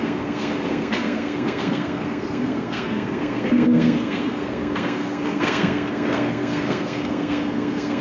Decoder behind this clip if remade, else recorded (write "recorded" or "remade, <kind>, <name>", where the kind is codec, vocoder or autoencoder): remade, codec, SNAC